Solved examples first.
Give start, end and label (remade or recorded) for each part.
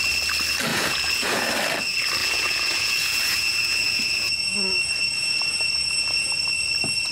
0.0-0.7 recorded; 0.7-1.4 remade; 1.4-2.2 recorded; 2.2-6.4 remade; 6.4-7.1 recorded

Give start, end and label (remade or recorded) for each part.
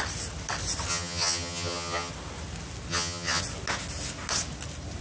0.0-0.9 recorded; 0.9-2.1 remade; 2.1-2.9 recorded; 2.9-3.4 remade; 3.4-5.0 recorded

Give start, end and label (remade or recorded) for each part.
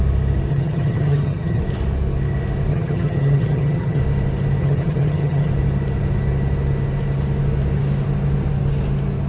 0.0-0.5 recorded; 0.5-1.6 remade; 1.6-2.7 recorded; 2.7-4.0 remade; 4.0-4.6 recorded; 4.6-5.5 remade; 5.5-9.3 recorded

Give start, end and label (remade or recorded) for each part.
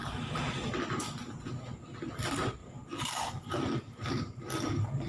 0.0-2.6 recorded; 2.6-4.1 remade; 4.1-5.1 recorded